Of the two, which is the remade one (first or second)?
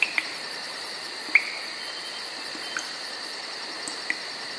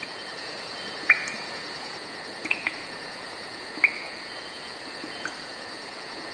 second